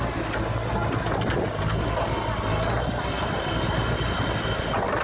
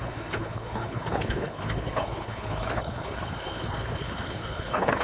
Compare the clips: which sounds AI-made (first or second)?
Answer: second